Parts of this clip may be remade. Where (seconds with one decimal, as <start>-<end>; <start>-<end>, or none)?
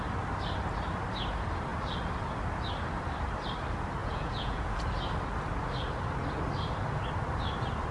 4.0-4.8